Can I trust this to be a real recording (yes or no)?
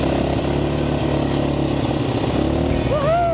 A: yes